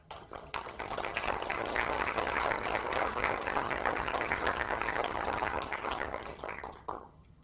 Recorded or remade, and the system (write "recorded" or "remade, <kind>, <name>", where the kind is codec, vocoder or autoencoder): remade, vocoder, HiFi-GAN